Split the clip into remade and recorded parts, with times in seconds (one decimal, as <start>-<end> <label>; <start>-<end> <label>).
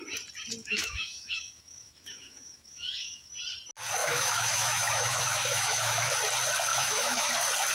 0.0-0.6 recorded; 0.6-3.3 remade; 3.3-4.0 recorded; 4.0-6.1 remade; 6.1-6.7 recorded; 6.7-7.3 remade; 7.3-7.7 recorded